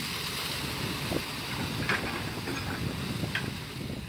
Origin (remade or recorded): recorded